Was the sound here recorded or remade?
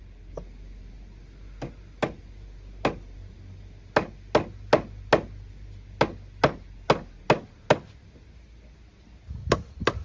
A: recorded